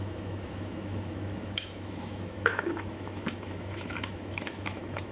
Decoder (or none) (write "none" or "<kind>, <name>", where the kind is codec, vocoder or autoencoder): autoencoder, DAC-VAE